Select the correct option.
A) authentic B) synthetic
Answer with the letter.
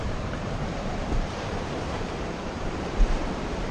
B